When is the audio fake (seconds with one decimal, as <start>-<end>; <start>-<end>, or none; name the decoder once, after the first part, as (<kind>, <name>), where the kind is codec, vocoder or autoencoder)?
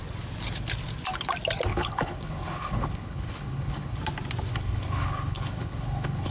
1.7-4.0 (codec, HILCodec); 4.5-6.3